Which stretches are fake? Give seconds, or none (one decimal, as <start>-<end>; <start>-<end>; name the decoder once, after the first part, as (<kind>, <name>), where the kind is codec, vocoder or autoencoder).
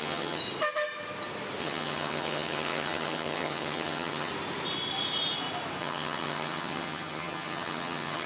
0.0-0.4 (vocoder, HiFi-GAN); 1.6-4.3; 5.8-8.3